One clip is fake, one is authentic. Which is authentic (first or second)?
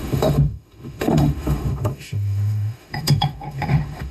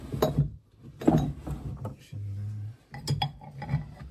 second